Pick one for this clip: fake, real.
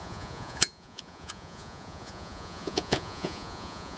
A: fake